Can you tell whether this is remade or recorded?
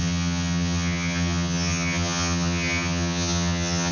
remade